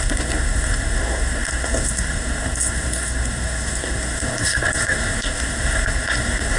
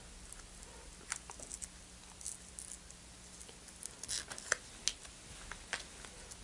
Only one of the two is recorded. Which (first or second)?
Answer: second